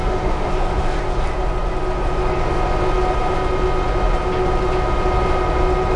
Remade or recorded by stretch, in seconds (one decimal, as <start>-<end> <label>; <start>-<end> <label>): 0.0-0.5 remade; 0.5-6.0 recorded